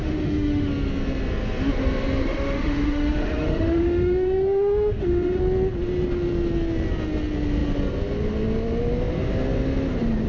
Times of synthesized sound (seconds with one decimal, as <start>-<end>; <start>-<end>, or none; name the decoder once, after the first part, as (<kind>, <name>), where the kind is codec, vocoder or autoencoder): 0.0-0.7 (autoencoder, DAC-VAE); 2.2-5.4